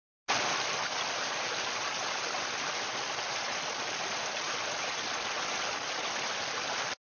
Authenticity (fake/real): real